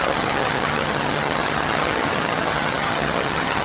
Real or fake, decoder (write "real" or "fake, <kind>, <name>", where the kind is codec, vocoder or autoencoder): fake, vocoder, HiFi-GAN